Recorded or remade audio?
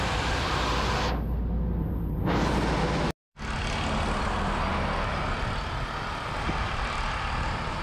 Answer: recorded